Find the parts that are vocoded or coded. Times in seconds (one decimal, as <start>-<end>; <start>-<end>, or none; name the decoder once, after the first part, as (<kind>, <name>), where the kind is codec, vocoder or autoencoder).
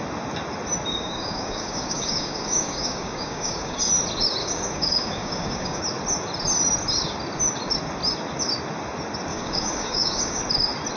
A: 0.9-3.9 (codec, DAC); 4.4-5.8; 9.3-10.4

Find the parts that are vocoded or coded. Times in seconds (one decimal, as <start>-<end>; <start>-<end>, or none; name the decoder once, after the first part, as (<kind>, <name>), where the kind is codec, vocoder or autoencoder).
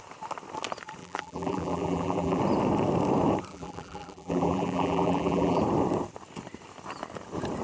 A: 1.0-2.4 (vocoder, BigVGAN v2); 3.5-5.6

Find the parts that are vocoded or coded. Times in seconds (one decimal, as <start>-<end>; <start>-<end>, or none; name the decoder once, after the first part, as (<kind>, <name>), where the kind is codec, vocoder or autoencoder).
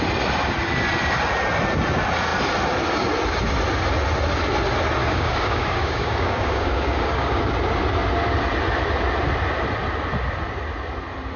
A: 5.0-7.4 (codec, DAC)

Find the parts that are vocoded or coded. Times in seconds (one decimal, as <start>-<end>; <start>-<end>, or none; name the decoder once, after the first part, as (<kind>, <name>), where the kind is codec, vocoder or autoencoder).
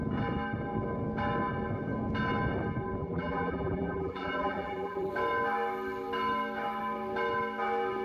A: 3.0-5.1 (vocoder, BigVGAN v2)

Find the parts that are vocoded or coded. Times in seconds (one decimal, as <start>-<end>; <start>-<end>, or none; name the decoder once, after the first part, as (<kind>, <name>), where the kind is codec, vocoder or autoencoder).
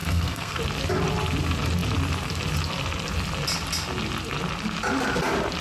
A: 0.0-0.6 (codec, SNAC)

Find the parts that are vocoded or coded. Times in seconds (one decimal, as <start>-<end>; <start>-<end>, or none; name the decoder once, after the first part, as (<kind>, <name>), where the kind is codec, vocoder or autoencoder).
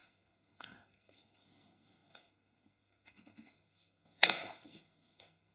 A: 0.0-5.5 (codec, SNAC)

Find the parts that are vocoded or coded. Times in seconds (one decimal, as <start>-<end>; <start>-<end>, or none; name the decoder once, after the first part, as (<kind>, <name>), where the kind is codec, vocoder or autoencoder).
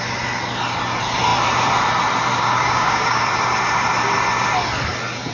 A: 2.3-3.2 (codec, DAC)